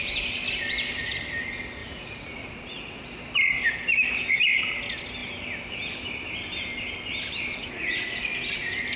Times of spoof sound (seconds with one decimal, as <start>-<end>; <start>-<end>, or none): 1.8-3.0; 7.6-8.3